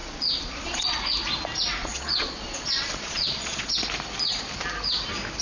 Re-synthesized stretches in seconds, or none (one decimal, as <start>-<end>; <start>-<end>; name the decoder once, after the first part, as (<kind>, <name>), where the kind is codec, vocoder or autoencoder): 0.0-1.0 (vocoder, Vocos); 1.8-3.7